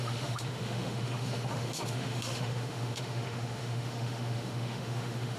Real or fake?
fake